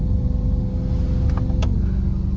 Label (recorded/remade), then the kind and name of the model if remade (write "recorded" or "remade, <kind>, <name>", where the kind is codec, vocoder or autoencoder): recorded